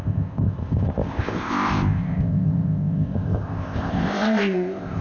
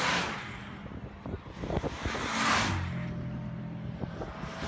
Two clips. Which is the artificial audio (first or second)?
first